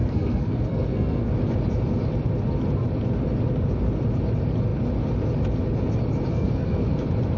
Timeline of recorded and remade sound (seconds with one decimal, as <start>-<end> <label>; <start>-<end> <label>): 0.0-1.3 remade; 1.3-6.3 recorded; 6.3-6.9 remade; 6.9-7.4 recorded